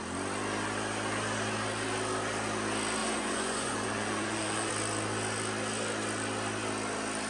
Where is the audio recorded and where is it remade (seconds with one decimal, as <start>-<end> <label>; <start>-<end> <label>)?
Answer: 0.0-3.0 recorded; 3.0-4.7 remade; 4.7-7.3 recorded

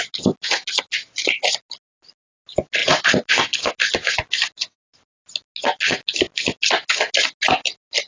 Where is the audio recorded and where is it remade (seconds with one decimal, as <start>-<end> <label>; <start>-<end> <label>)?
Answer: 0.0-8.1 recorded

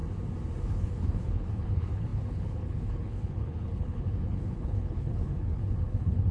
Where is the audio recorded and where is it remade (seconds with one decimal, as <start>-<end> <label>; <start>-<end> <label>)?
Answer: 0.0-0.6 recorded; 0.6-6.3 remade

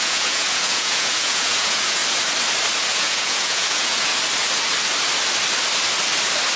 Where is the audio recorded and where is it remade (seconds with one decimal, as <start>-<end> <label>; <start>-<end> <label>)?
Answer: 0.0-2.0 remade; 2.0-2.9 recorded; 2.9-4.1 remade; 4.1-6.6 recorded

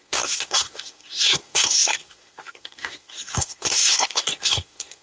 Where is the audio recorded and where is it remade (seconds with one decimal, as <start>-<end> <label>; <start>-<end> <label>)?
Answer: 0.0-5.0 remade

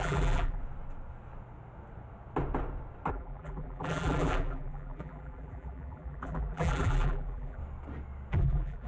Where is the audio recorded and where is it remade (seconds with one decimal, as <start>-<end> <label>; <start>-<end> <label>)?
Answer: 0.0-0.6 remade; 0.6-3.1 recorded; 3.1-7.6 remade; 7.6-8.3 recorded; 8.3-8.9 remade

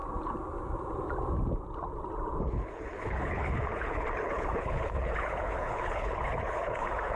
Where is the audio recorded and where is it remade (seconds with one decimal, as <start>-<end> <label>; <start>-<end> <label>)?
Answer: 0.0-2.4 recorded; 2.4-7.2 remade